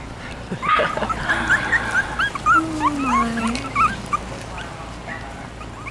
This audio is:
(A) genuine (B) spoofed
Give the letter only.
A